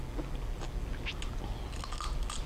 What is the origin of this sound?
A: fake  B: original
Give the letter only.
B